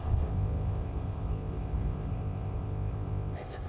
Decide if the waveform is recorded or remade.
remade